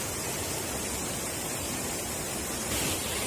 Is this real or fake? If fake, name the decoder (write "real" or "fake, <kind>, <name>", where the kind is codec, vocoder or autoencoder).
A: real